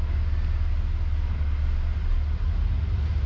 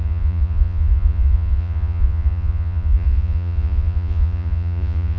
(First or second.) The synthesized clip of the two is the second